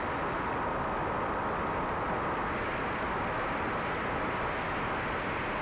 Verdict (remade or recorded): recorded